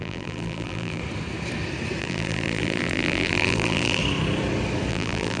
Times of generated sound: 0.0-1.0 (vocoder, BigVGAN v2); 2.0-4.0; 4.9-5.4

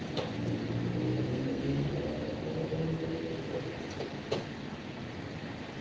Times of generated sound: 1.3-1.9 (codec, SNAC)

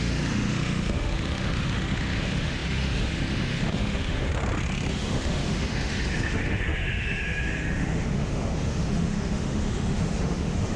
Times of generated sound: 0.0-4.3 (autoencoder, DAC-VAE); 4.9-10.8

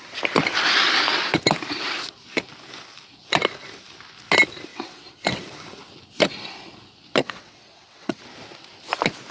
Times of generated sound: 4.7-5.4 (vocoder, WaveNeXt); 7.2-8.2

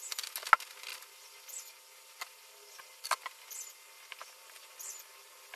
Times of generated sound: none

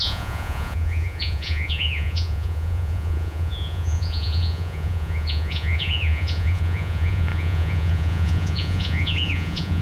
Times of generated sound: 0.0-9.8 (vocoder, Vocos)

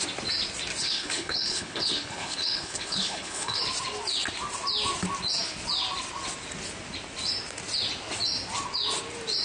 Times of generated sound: 0.8-3.6 (codec, HILCodec)